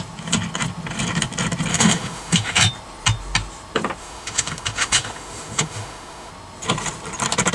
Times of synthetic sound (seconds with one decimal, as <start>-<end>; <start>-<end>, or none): 1.7-2.6; 4.0-6.3